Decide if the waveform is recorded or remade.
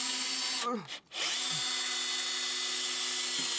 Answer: recorded